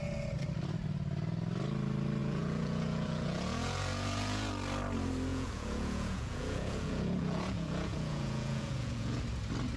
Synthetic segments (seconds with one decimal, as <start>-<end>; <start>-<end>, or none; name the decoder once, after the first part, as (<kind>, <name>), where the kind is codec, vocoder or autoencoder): 2.2-4.5 (vocoder, Vocos); 5.3-9.2